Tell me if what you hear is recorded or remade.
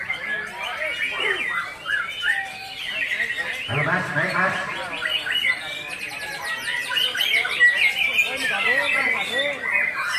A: recorded